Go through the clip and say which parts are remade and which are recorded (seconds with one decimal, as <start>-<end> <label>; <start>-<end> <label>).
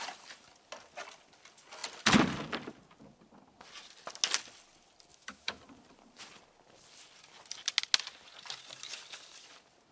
0.0-5.1 recorded; 5.1-5.6 remade; 5.6-9.9 recorded